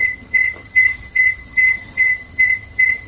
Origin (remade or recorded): remade